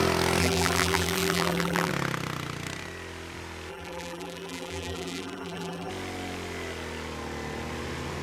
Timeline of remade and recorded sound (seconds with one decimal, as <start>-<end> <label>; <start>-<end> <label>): 0.0-0.4 recorded; 0.4-1.9 remade; 1.9-3.7 recorded; 3.7-5.9 remade; 5.9-8.2 recorded